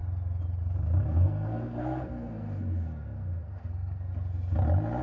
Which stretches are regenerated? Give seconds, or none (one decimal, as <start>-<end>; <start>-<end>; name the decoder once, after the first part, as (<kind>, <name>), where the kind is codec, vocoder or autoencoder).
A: 1.1-4.1 (codec, SNAC)